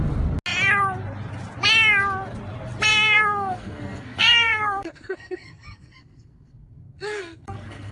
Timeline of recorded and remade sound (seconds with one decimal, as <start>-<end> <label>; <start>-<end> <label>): 0.0-2.9 recorded; 2.9-7.9 remade